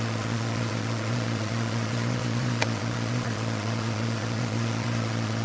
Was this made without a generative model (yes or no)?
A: no